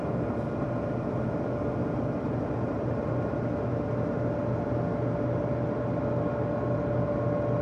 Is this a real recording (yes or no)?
yes